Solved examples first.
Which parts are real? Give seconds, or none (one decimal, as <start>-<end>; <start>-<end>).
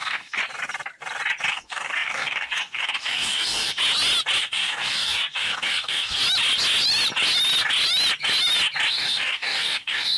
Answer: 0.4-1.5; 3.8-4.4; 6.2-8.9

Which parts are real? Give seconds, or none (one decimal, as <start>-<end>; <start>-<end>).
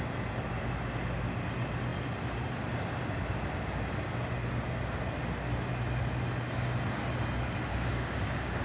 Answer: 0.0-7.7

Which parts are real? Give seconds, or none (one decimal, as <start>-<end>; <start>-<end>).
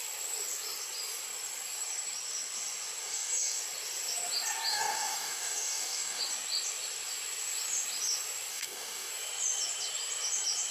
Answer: 0.0-3.0; 3.6-4.7; 6.2-8.5; 9.1-10.7